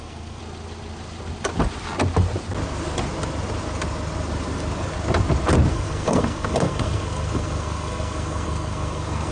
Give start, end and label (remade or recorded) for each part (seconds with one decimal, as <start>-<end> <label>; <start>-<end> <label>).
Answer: 0.0-0.4 remade; 0.4-5.7 recorded; 5.7-9.3 remade